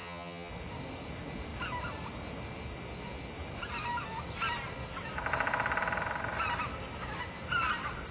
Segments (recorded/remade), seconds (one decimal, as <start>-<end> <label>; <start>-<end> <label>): 0.0-0.5 remade; 0.5-8.1 recorded